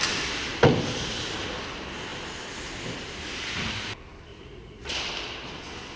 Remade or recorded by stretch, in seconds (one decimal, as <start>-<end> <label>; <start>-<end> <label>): 0.0-4.3 recorded; 4.3-4.9 remade; 4.9-6.0 recorded